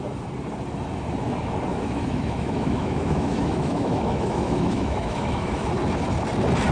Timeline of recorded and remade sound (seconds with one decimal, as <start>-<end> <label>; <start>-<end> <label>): 0.0-1.7 recorded; 1.7-5.7 remade; 5.7-6.7 recorded